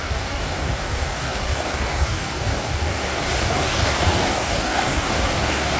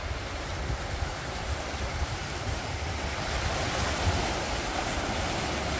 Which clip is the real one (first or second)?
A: second